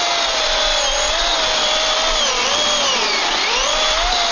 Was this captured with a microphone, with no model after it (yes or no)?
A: yes